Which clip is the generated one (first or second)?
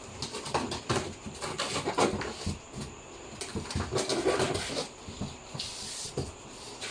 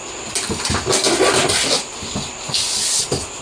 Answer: first